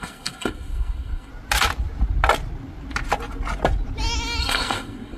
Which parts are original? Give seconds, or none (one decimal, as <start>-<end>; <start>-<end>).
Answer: 1.3-4.4